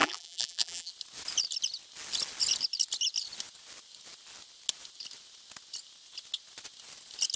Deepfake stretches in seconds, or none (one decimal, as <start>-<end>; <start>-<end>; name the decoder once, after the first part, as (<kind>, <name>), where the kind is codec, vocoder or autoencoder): 0.0-0.9 (vocoder, BigVGAN v2)